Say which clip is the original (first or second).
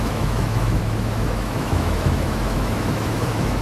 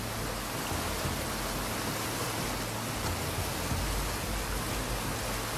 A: second